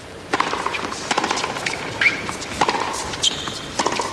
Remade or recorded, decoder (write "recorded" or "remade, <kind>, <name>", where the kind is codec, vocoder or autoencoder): recorded